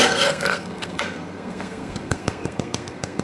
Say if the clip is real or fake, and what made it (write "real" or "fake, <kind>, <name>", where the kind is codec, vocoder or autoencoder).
fake, codec, SNAC